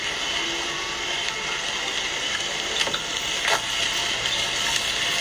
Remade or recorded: recorded